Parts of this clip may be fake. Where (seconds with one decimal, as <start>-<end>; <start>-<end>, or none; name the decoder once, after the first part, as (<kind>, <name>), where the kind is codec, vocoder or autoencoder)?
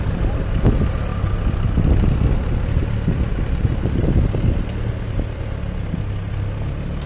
none